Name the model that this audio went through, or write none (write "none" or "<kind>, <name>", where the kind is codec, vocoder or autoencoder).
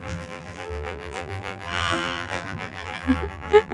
vocoder, BigVGAN v2